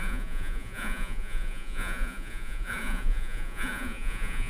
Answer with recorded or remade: remade